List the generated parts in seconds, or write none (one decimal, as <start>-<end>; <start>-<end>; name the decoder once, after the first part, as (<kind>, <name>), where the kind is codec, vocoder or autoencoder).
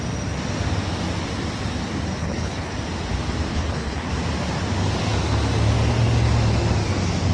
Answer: 2.2-2.7 (codec, HILCodec); 3.5-4.1